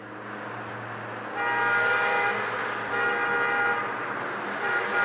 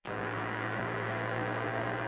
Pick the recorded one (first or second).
first